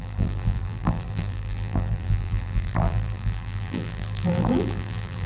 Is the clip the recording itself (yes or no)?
no